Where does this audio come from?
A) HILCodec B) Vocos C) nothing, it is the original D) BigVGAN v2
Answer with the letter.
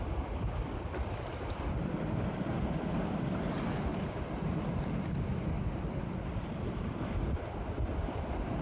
D